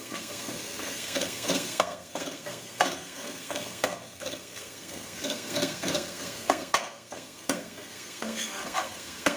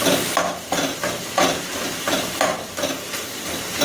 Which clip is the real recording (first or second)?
second